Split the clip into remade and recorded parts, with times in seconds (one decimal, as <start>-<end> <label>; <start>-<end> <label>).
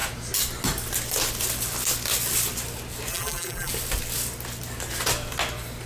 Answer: 0.0-3.1 recorded; 3.1-3.7 remade; 3.7-5.9 recorded